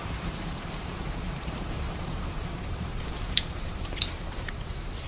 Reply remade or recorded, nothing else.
remade